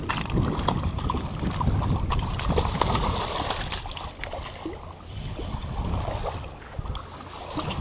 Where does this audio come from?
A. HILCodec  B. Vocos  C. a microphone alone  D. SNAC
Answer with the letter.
C